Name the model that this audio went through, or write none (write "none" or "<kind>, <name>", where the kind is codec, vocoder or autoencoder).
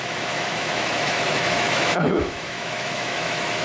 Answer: autoencoder, DAC-VAE